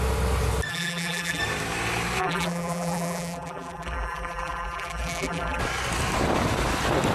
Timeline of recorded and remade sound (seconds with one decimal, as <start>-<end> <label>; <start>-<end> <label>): 0.0-0.7 recorded; 0.7-1.4 remade; 1.4-2.2 recorded; 2.2-5.6 remade; 5.6-7.1 recorded